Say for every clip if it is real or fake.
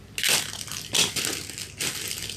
real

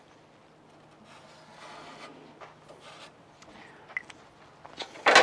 real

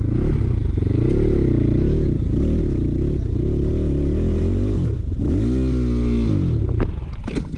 real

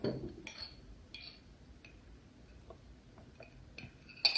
real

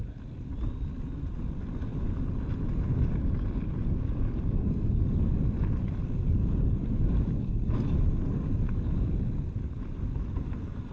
real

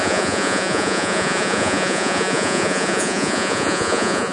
fake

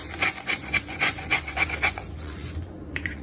fake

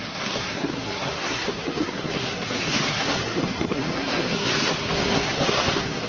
fake